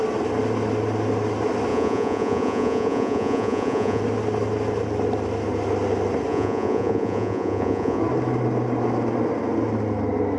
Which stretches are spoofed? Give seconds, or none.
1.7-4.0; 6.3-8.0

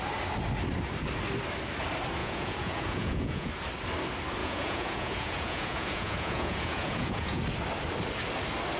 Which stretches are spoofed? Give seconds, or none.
2.2-3.5; 4.4-7.4

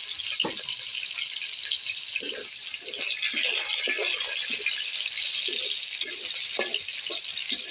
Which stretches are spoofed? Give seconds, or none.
none

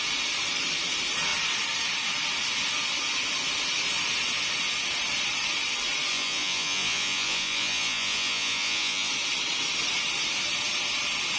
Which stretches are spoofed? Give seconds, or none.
6.1-9.1

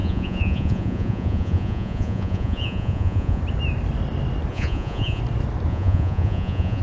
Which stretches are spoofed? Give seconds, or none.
0.0-3.4; 4.5-5.2; 5.7-6.8

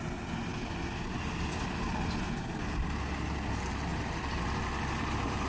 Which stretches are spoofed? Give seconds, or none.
none

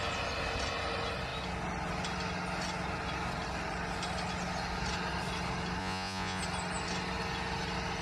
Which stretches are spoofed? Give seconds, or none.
5.8-6.4

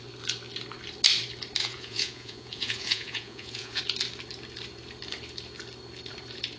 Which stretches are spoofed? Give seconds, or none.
1.6-3.8